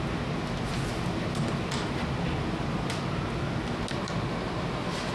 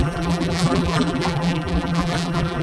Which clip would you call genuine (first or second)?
first